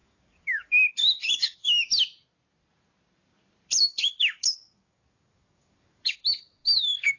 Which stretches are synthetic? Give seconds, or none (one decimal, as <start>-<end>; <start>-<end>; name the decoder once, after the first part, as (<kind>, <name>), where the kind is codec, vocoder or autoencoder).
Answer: 0.0-1.9 (codec, DAC); 3.8-7.2